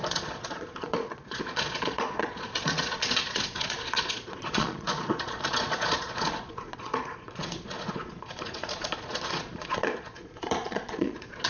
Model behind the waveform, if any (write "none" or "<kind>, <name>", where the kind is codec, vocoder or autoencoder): vocoder, Vocos